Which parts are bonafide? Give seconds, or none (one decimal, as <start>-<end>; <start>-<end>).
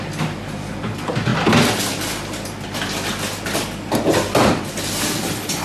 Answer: 0.0-5.6